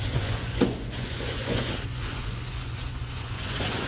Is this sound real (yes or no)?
no